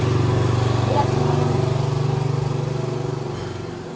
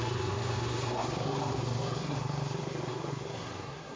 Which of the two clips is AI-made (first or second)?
second